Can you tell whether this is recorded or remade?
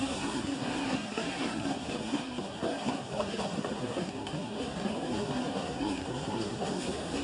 remade